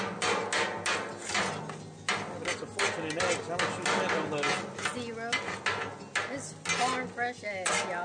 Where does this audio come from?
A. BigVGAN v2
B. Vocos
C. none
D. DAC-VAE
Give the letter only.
C